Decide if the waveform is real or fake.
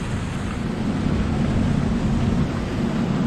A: real